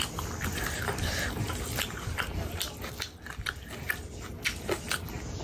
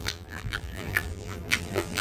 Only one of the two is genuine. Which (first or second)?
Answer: first